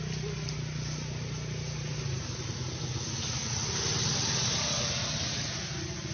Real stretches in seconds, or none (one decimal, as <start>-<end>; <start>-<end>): 0.0-6.1